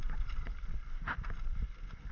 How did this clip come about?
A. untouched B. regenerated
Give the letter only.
A